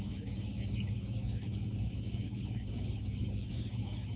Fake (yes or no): yes